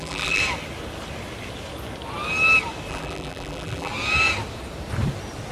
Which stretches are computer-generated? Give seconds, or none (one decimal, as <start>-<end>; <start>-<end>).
0.0-0.4; 2.9-3.9